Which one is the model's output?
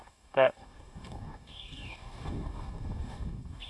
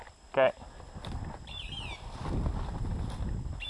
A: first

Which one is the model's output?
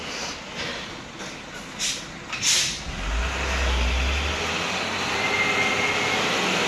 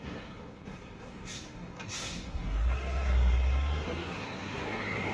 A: second